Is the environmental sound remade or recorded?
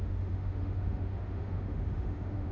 remade